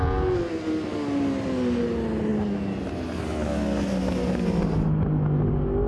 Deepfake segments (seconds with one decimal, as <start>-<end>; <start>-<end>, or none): none